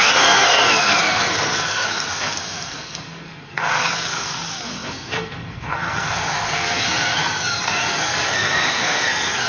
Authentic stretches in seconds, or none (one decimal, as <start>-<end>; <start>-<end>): none